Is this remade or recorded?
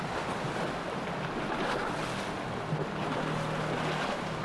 recorded